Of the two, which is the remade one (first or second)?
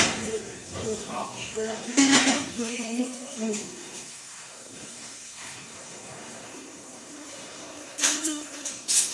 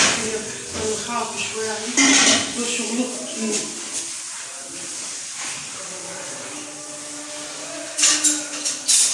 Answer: first